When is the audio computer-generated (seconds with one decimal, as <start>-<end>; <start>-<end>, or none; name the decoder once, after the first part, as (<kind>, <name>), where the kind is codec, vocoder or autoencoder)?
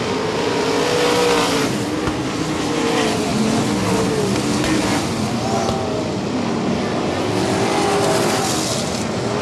none